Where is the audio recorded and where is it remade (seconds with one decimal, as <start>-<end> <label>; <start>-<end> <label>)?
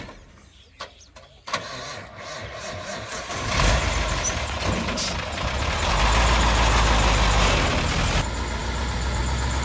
0.0-2.4 recorded; 2.4-3.9 remade; 3.9-8.6 recorded; 8.6-9.2 remade; 9.2-9.6 recorded